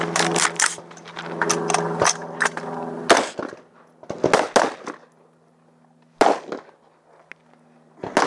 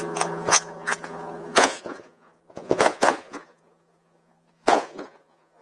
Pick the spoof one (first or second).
second